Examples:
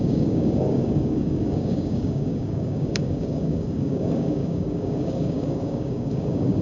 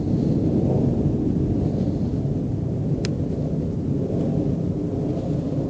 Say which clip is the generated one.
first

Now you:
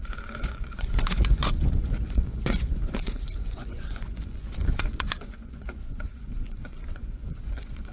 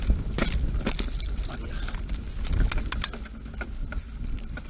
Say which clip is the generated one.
first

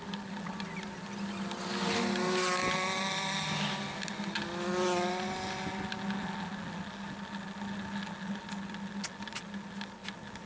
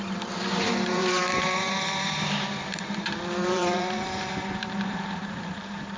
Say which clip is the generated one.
second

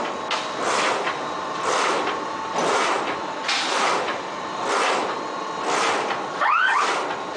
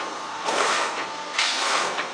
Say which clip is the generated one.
second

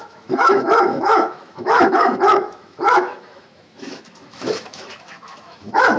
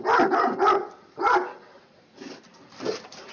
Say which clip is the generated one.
first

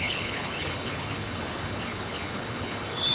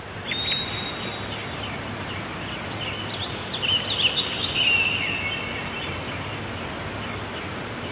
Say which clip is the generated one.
first